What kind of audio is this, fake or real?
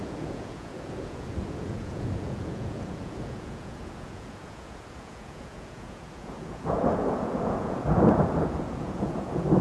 fake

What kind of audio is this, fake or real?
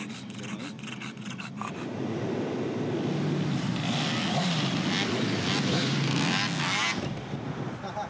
real